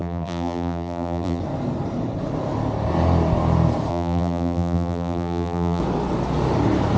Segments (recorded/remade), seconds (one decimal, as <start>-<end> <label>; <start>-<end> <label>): 0.0-1.4 remade; 1.4-3.9 recorded; 3.9-5.8 remade; 5.8-7.0 recorded